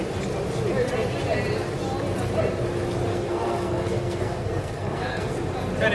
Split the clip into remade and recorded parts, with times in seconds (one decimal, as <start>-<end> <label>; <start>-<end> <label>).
0.0-3.1 recorded; 3.1-5.5 remade; 5.5-5.9 recorded